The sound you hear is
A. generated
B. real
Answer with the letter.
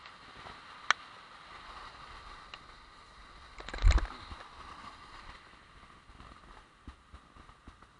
B